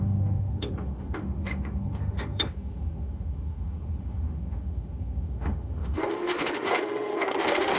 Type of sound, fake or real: fake